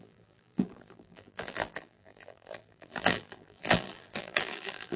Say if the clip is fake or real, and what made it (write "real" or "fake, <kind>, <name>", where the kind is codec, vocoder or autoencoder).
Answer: fake, vocoder, BigVGAN v2